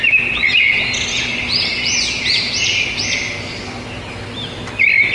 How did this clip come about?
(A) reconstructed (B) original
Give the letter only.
B